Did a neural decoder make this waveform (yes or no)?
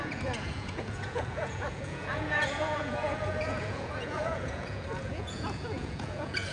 yes